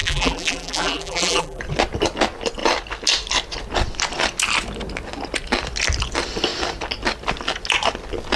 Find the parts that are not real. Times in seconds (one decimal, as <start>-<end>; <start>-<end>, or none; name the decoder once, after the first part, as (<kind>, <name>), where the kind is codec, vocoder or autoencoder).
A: 0.0-1.6 (vocoder, BigVGAN v2)